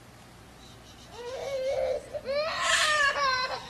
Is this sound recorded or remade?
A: recorded